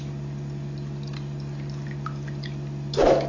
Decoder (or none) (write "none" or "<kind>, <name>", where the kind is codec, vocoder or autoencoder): none